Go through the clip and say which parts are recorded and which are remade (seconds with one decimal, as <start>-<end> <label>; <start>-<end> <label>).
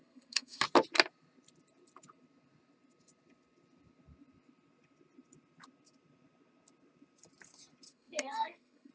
0.0-0.6 remade; 0.6-7.9 recorded; 7.9-8.9 remade